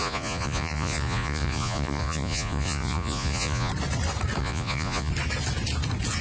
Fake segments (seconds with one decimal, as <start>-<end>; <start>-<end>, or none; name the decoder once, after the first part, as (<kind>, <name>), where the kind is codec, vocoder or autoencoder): 0.0-3.7 (vocoder, Vocos); 4.4-5.1

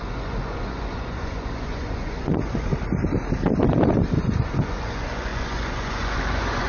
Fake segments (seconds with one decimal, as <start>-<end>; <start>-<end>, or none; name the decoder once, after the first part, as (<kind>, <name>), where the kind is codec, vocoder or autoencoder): 0.0-2.7 (vocoder, Vocos); 4.4-6.7

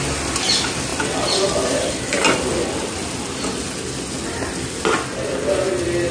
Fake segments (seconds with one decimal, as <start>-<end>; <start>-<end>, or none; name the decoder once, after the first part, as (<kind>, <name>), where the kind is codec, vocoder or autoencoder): none

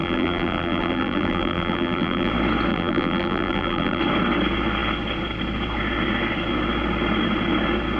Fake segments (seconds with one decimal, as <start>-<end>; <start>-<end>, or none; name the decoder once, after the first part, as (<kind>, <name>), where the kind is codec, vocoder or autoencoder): 0.0-2.3 (vocoder, BigVGAN v2); 2.7-4.0

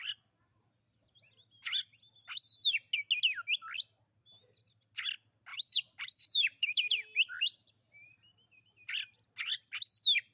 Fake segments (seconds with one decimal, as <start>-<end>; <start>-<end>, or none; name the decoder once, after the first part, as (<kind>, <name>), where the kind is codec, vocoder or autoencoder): 5.5-8.9 (vocoder, BigVGAN v2)

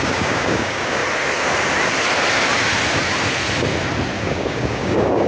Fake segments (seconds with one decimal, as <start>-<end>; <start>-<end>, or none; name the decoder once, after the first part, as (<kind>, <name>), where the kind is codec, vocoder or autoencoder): 0.0-1.0 (codec, DAC); 4.2-5.3

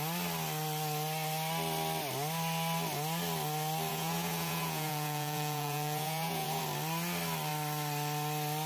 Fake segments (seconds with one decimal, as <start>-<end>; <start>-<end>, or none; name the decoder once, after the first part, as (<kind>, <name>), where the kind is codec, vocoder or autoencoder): 3.9-6.6 (vocoder, Vocos)